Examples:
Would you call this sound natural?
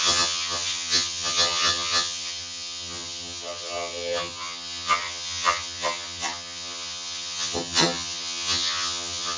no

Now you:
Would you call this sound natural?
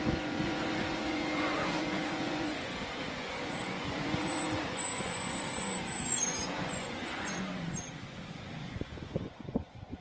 no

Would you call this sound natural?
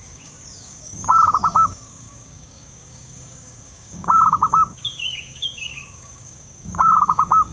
no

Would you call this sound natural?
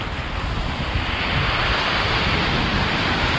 yes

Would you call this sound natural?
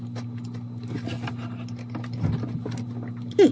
yes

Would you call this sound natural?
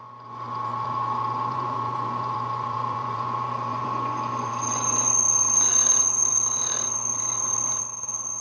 no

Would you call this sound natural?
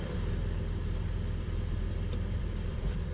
no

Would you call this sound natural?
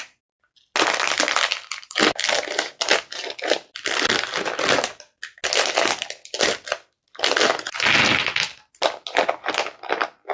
yes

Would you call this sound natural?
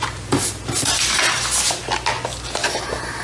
yes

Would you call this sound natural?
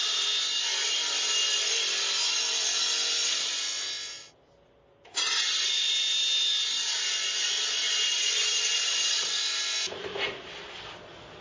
yes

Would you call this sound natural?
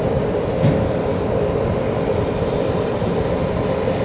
yes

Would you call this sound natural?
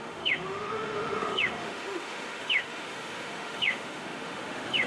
no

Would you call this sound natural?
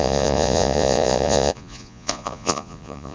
no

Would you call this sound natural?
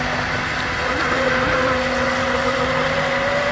yes